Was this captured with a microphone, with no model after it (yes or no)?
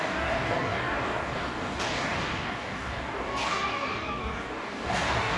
no